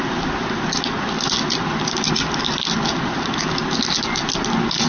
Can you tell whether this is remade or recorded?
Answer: recorded